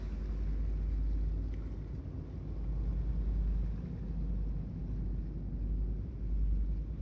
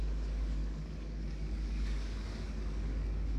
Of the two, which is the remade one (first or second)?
second